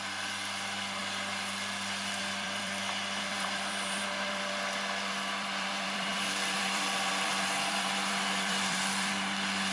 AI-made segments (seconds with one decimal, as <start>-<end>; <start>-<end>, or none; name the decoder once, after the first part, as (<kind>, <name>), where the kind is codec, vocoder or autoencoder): 0.0-9.7 (vocoder, BigVGAN v2)